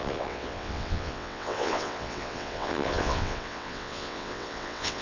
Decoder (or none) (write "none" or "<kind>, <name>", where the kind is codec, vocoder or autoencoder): vocoder, WaveNeXt